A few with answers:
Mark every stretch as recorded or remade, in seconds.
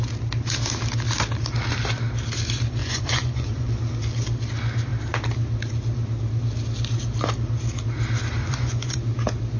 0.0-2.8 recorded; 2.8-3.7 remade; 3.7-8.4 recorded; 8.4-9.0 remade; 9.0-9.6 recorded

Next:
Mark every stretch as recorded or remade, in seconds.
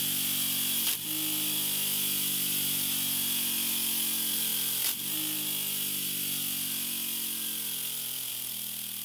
0.0-9.0 recorded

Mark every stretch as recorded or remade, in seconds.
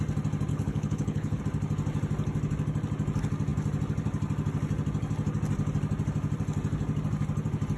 0.0-0.5 recorded; 0.5-1.4 remade; 1.4-7.8 recorded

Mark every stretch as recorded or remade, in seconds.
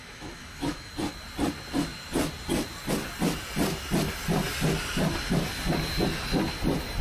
0.0-0.9 remade; 0.9-7.0 recorded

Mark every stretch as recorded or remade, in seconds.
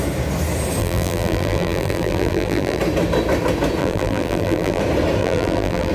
0.0-0.8 recorded; 0.8-2.8 remade; 2.8-3.8 recorded; 3.8-4.8 remade; 4.8-5.2 recorded; 5.2-5.9 remade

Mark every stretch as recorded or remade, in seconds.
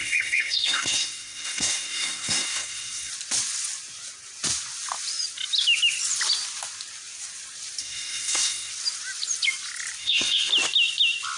0.0-3.1 remade; 3.1-7.8 recorded; 7.8-8.7 remade; 8.7-10.0 recorded; 10.0-10.5 remade; 10.5-11.4 recorded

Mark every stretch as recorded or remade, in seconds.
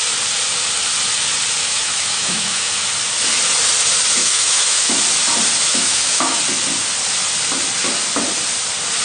0.0-1.6 recorded; 1.6-2.8 remade; 2.8-4.2 recorded; 4.2-4.9 remade; 4.9-5.7 recorded; 5.7-6.4 remade; 6.4-9.0 recorded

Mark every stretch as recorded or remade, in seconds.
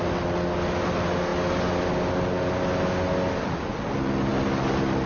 0.0-5.1 recorded